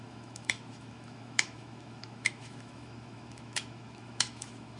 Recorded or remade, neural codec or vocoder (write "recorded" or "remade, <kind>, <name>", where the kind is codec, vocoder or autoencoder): remade, autoencoder, DAC-VAE